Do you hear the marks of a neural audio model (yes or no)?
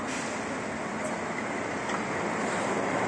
no